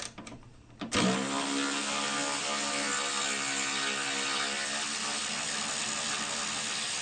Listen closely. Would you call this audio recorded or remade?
recorded